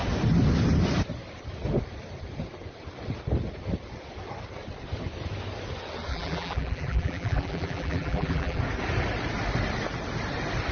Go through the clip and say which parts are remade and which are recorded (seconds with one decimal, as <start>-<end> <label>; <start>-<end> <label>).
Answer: 0.0-6.1 recorded; 6.1-8.6 remade; 8.6-10.7 recorded